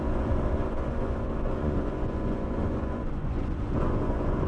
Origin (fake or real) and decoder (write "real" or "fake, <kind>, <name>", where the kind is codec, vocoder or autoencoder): fake, vocoder, Vocos